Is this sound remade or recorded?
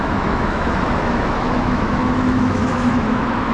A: remade